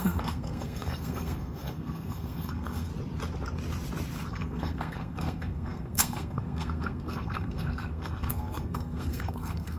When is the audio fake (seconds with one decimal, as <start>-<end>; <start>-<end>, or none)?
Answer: 0.0-2.9; 4.3-9.8

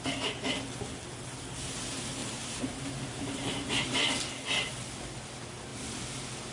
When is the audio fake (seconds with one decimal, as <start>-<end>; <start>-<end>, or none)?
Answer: 2.2-4.0

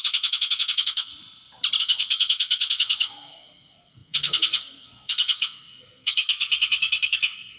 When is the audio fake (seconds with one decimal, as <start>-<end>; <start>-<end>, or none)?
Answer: 0.0-1.1; 1.8-7.6

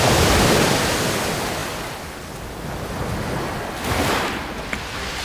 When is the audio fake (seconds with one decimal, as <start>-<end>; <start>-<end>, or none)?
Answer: none

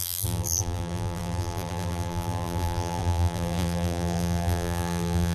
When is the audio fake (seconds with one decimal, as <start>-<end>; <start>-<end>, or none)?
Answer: 0.0-5.3